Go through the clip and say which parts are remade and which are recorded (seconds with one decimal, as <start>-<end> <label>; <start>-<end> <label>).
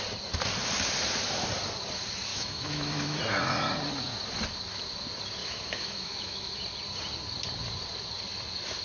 0.0-2.3 recorded; 2.3-3.2 remade; 3.2-5.4 recorded; 5.4-6.6 remade; 6.6-8.8 recorded